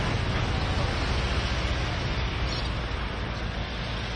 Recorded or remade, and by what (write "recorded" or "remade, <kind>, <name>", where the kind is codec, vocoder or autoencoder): recorded